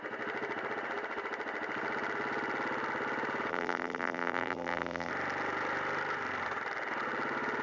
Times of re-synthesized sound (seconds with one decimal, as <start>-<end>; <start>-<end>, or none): 3.5-5.1